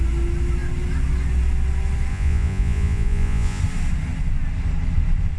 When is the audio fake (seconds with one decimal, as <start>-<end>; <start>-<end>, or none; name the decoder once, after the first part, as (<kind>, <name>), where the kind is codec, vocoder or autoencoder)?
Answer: 2.1-3.6 (vocoder, Vocos)